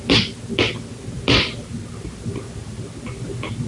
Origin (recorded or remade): recorded